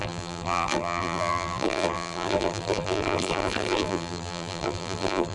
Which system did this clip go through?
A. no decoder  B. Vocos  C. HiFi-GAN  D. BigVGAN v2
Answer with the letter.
D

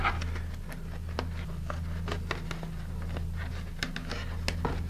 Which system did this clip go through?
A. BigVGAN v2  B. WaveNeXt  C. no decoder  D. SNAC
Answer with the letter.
C